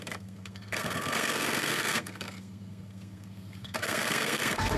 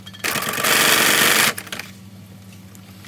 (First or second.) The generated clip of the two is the first